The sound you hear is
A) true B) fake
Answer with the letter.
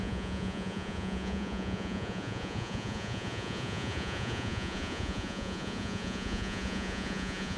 B